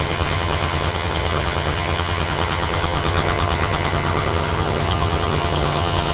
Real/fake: fake